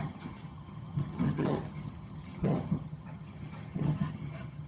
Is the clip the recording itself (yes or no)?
no